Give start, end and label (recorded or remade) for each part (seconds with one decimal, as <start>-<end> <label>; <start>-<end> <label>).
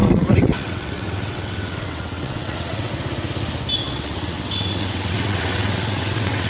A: 0.0-2.9 remade; 2.9-3.8 recorded; 3.8-6.5 remade